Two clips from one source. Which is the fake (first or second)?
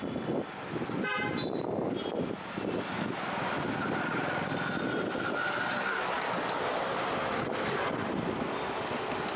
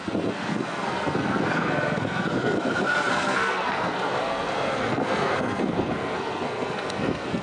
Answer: second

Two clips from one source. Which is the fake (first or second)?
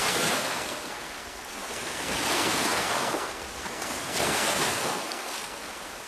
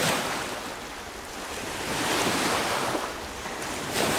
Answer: first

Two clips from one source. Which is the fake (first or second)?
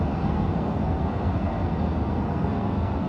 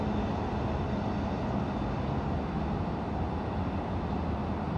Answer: first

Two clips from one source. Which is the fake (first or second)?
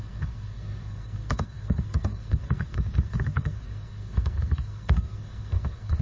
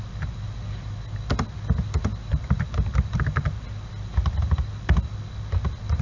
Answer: first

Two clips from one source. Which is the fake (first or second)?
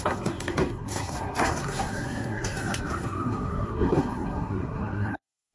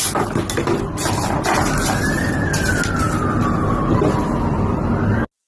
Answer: first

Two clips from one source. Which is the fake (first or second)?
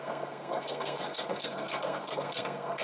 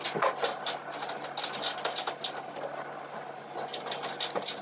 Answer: first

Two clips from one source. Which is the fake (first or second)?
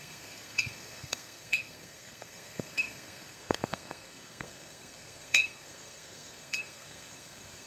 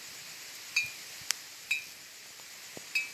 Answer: first